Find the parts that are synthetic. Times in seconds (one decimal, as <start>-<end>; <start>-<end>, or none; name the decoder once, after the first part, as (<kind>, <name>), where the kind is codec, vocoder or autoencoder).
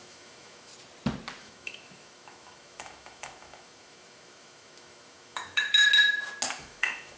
0.0-0.7 (autoencoder, DAC-VAE); 1.4-5.9; 6.6-7.2